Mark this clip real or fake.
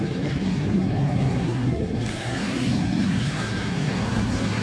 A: fake